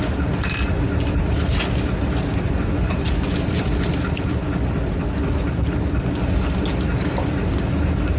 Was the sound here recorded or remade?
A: recorded